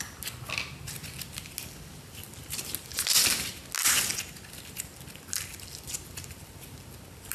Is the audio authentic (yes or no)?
yes